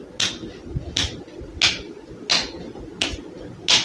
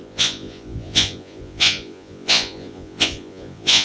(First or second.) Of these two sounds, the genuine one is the first